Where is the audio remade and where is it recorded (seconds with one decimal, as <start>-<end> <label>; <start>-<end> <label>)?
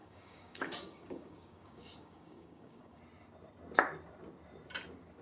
0.0-3.0 remade; 3.0-5.2 recorded